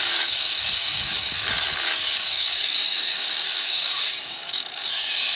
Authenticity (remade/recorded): remade